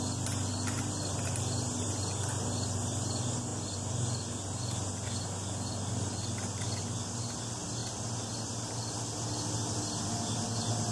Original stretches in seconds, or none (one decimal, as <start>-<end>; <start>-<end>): 0.0-10.9